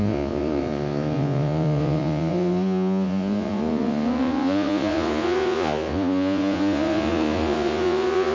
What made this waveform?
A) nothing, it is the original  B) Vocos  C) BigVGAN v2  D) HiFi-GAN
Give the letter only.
B